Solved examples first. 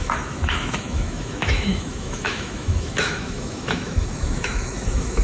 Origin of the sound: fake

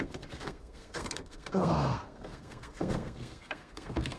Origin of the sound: fake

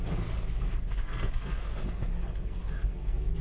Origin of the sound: fake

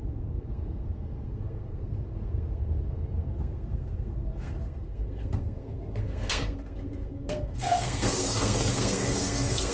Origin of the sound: fake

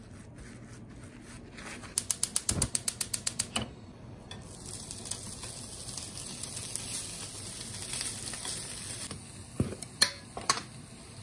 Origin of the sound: real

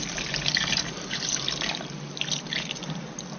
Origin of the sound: real